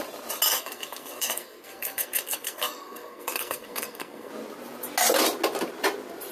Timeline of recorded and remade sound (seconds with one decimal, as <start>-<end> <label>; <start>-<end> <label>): 0.0-0.5 recorded; 0.5-4.3 remade; 4.3-6.3 recorded